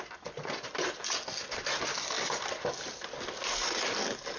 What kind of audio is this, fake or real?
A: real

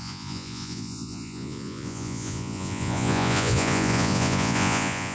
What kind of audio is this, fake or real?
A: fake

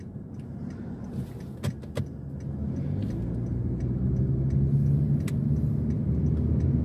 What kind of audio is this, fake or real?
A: real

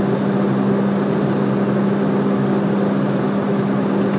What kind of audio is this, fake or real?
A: real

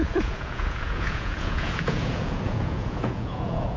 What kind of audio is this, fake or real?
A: fake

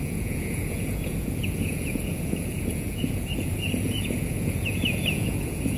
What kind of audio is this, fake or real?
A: fake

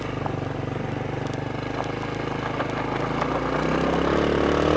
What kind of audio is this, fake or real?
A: real